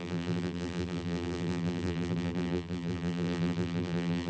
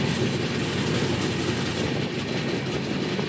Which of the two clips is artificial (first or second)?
first